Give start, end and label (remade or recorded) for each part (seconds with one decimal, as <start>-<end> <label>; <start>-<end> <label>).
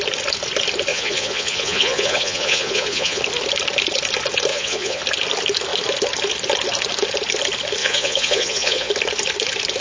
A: 0.0-0.9 recorded; 0.9-3.2 remade; 3.2-4.5 recorded; 4.5-5.0 remade; 5.0-7.8 recorded; 7.8-8.9 remade; 8.9-9.8 recorded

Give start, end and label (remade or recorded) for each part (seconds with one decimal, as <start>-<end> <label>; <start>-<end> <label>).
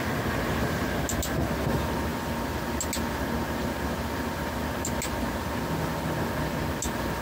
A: 0.0-7.2 recorded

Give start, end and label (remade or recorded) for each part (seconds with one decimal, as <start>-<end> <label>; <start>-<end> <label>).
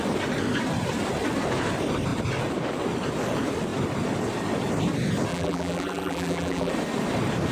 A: 0.0-5.3 recorded; 5.3-6.7 remade; 6.7-7.5 recorded